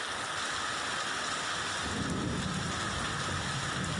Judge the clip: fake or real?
real